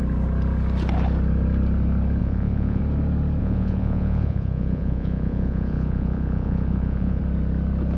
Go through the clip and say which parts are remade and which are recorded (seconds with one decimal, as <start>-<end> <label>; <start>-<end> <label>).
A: 0.0-2.2 recorded; 2.2-2.8 remade; 2.8-3.4 recorded; 3.4-7.2 remade; 7.2-8.0 recorded